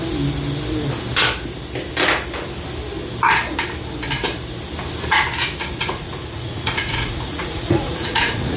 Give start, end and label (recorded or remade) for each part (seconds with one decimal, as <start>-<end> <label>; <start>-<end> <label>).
0.0-5.8 recorded; 5.8-8.6 remade